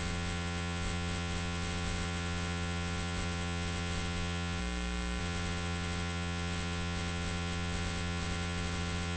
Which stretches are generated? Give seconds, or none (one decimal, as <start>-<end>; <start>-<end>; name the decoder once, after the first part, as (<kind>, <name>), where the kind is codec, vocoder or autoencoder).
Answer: 0.0-4.6 (vocoder, WaveNeXt); 5.2-9.2